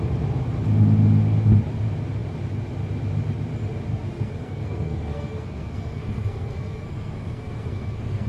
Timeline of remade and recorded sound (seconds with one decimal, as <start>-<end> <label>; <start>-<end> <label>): 0.0-3.9 recorded; 3.9-8.3 remade